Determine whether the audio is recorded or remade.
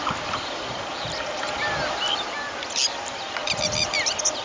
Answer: recorded